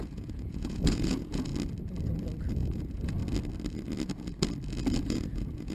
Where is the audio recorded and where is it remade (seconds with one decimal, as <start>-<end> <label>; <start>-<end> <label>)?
0.0-1.5 remade; 1.5-2.5 recorded; 2.5-3.2 remade; 3.2-5.0 recorded; 5.0-5.7 remade